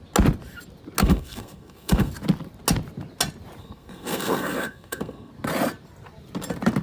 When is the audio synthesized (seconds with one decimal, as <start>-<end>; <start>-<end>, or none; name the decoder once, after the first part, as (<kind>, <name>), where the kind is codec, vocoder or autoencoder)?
1.0-2.1 (codec, SNAC); 3.6-5.3